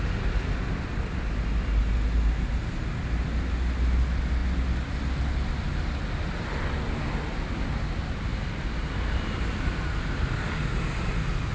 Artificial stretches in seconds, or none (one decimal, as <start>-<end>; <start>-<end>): 8.3-10.2